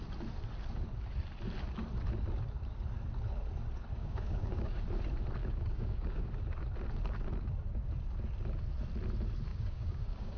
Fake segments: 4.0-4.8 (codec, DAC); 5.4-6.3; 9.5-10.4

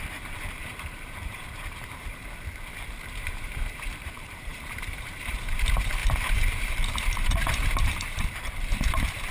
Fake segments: 0.0-2.2 (vocoder, BigVGAN v2); 3.2-9.3

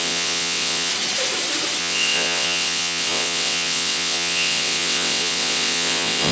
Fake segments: 0.0-0.9 (vocoder, WaveNeXt); 1.8-6.3

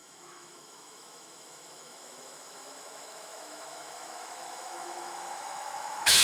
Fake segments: 0.0-6.2 (autoencoder, DAC-VAE)